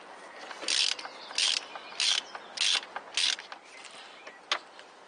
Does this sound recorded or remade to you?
recorded